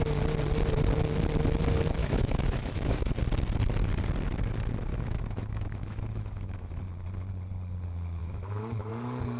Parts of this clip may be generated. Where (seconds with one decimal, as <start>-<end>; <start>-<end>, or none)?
2.0-3.1; 4.9-6.8; 8.2-8.9